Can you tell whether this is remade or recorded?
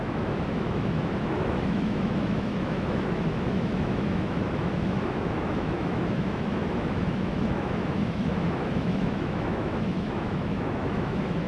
remade